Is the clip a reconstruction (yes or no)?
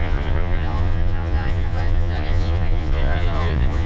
yes